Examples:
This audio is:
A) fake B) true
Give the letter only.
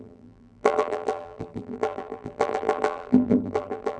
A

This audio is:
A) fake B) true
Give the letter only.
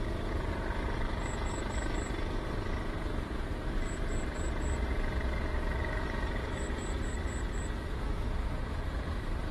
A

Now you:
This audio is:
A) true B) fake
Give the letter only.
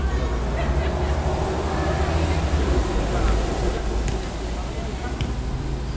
A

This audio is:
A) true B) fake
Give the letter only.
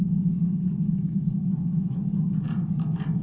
A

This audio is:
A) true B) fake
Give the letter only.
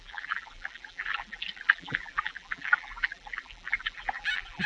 B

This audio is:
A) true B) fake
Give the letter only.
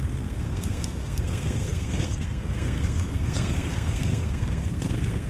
B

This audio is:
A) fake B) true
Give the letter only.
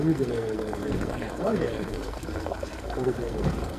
A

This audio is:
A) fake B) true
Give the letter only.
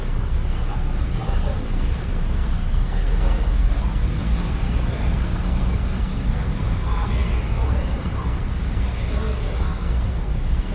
A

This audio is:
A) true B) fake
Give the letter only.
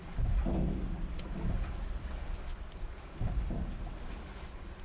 A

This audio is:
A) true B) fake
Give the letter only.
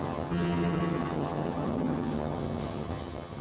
B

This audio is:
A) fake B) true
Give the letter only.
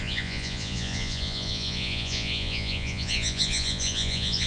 A